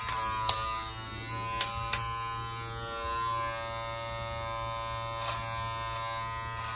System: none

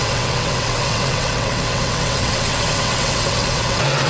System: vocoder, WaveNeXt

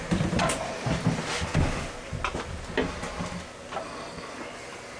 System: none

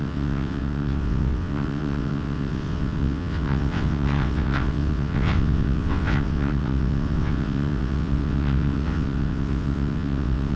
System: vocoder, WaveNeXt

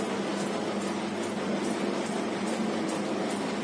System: none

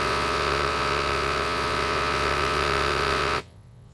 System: vocoder, WaveNeXt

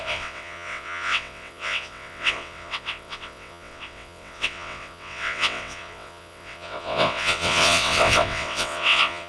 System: vocoder, WaveNeXt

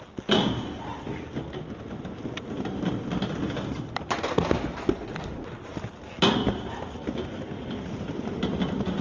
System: none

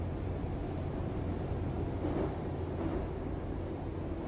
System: none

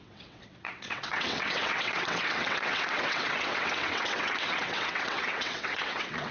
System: vocoder, WaveNeXt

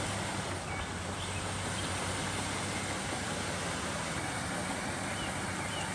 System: none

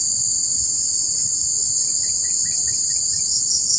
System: none